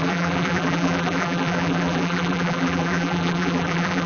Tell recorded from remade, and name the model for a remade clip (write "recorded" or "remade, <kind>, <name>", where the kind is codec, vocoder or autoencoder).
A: remade, vocoder, BigVGAN v2